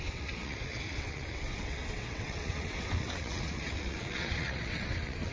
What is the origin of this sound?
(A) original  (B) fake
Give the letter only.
B